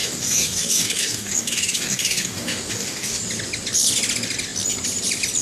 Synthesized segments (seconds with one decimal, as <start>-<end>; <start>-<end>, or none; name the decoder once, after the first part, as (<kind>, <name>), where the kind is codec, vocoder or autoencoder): 0.0-3.2 (codec, DAC)